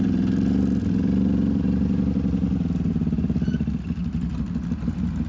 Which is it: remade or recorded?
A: recorded